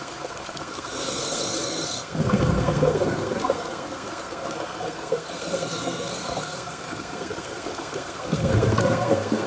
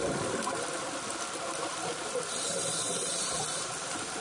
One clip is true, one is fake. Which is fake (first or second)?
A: first